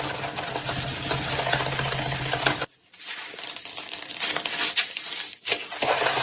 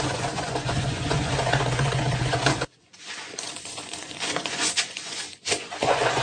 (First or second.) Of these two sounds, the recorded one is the first